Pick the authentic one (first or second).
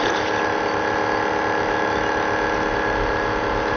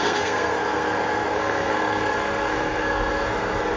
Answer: first